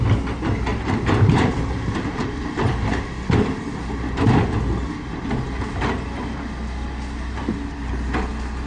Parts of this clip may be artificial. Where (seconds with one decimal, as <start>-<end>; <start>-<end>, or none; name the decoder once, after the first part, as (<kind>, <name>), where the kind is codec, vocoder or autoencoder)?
0.7-3.0 (vocoder, BigVGAN v2)